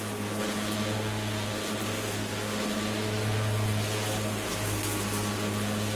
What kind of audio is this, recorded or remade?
recorded